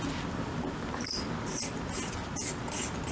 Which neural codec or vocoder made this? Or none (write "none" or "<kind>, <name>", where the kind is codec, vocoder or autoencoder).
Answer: none